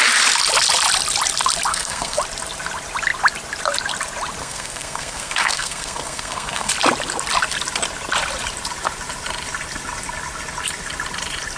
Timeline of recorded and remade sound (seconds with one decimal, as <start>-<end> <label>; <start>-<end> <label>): 0.0-1.7 recorded; 1.7-2.2 remade; 2.2-4.4 recorded; 4.4-6.7 remade; 6.7-11.6 recorded